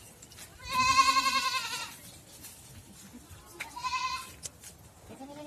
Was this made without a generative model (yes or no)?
yes